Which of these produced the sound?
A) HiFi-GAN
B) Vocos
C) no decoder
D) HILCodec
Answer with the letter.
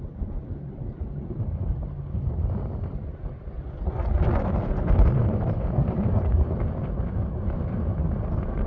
C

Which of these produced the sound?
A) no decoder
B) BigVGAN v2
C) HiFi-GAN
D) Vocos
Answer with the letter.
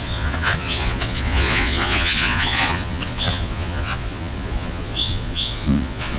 D